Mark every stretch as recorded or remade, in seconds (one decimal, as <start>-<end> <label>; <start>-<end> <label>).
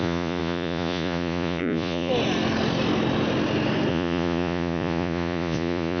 0.0-2.1 remade; 2.1-3.9 recorded; 3.9-6.0 remade